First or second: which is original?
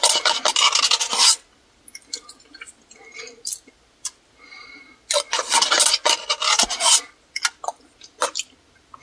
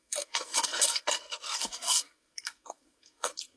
first